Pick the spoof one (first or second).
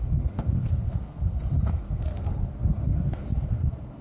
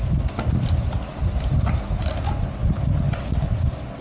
first